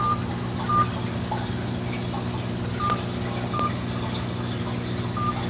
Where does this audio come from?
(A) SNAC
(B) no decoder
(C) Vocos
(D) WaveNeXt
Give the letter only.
B